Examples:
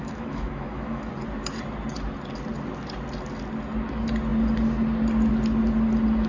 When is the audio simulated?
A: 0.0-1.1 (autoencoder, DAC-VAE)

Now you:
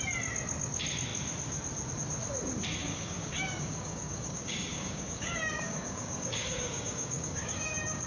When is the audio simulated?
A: 2.8-8.1 (codec, DAC)

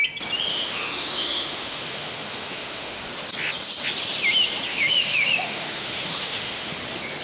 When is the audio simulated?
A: 0.5-3.0 (autoencoder, DAC-VAE); 4.7-6.8

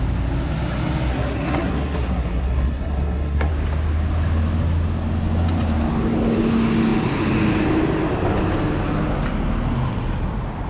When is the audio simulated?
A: 1.1-3.5 (codec, SNAC)